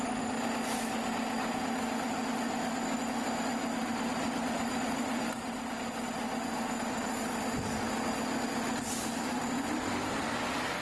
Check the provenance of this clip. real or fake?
real